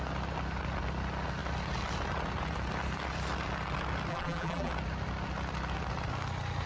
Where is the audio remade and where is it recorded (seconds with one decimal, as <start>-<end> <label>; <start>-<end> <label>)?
0.0-4.1 recorded; 4.1-4.7 remade; 4.7-6.7 recorded